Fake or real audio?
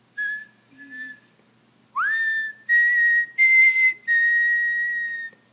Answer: real